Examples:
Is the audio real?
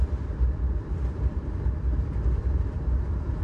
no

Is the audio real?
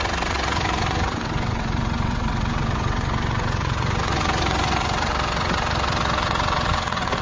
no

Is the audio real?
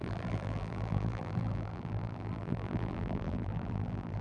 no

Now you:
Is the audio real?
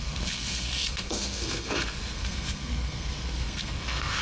no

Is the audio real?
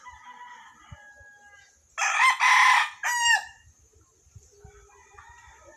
yes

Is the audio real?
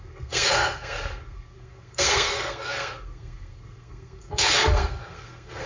no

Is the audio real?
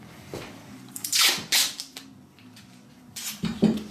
yes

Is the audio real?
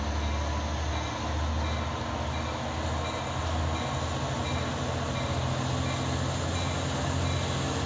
yes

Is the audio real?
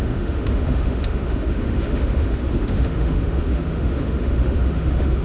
no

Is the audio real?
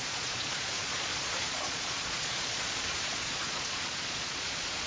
no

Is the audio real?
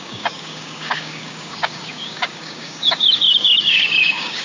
no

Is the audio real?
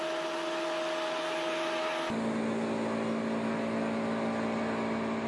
yes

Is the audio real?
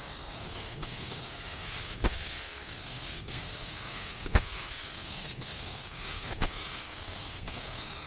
no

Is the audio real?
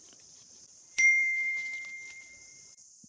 no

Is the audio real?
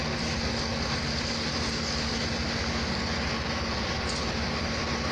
yes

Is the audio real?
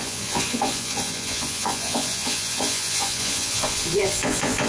no